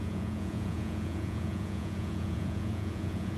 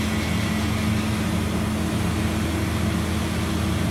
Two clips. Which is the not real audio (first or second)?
first